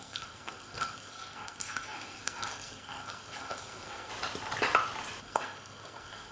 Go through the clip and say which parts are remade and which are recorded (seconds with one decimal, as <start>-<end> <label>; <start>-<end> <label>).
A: 0.0-4.1 remade; 4.1-5.2 recorded; 5.2-6.3 remade